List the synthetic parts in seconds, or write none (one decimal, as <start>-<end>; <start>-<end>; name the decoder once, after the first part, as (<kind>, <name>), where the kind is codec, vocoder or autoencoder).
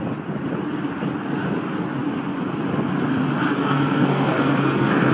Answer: 3.6-5.1 (codec, SNAC)